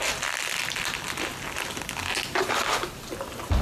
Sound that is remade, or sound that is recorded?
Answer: recorded